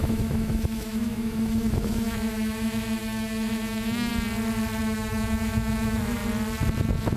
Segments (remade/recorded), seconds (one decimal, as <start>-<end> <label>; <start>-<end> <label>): 0.0-4.1 remade; 4.1-4.8 recorded; 4.8-6.2 remade; 6.2-7.2 recorded